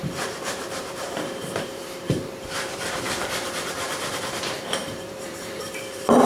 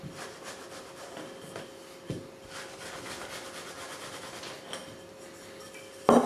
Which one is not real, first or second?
first